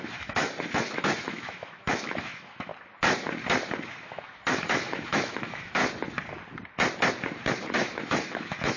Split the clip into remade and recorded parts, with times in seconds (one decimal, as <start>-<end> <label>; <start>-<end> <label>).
0.0-2.7 remade; 2.7-3.9 recorded; 3.9-5.8 remade; 5.8-7.7 recorded; 7.7-8.8 remade